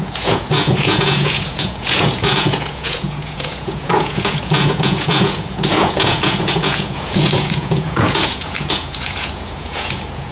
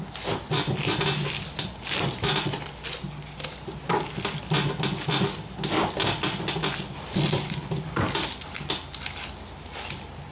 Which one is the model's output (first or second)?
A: first